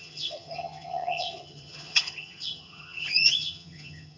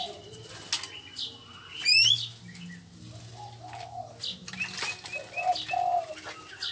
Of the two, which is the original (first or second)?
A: second